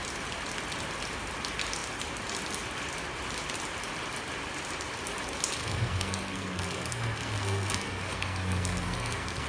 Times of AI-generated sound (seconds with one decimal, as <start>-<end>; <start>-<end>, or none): 5.6-9.5